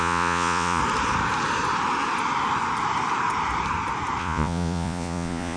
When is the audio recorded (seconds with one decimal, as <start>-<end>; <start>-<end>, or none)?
0.8-4.2